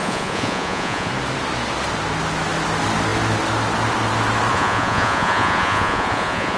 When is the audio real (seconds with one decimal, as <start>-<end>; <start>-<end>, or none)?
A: 1.1-4.5